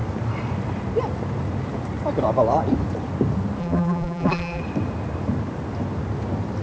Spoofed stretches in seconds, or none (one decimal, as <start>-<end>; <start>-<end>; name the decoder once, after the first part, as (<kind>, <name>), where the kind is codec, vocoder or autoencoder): 3.6-4.6 (vocoder, BigVGAN v2)